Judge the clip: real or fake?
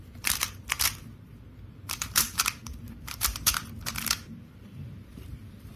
fake